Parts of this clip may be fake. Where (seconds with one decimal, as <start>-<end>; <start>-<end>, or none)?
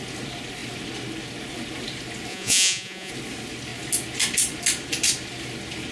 2.3-3.1